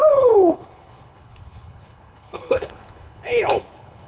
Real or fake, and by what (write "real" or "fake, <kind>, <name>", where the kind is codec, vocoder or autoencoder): fake, codec, HILCodec